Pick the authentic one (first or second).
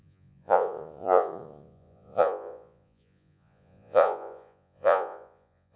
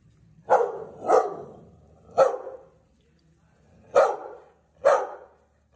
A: second